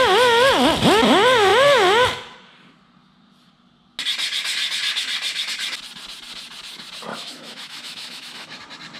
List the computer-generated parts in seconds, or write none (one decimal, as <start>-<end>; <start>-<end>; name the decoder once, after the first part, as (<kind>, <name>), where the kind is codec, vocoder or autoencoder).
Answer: 7.1-8.6 (autoencoder, DAC-VAE)